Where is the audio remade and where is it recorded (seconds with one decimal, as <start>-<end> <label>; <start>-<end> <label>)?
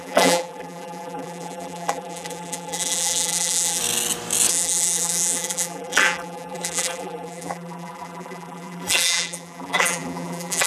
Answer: 0.0-3.8 remade; 3.8-4.5 recorded; 4.5-10.7 remade